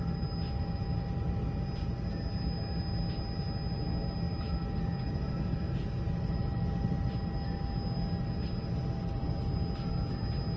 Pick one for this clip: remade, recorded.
recorded